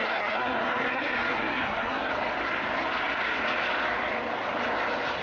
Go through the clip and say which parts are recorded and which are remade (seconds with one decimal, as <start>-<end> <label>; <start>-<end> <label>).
0.0-2.1 remade; 2.1-5.2 recorded